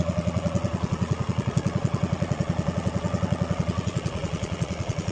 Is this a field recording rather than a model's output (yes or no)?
no